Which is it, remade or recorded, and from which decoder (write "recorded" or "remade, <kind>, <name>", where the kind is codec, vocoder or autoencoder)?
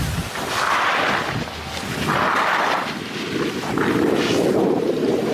recorded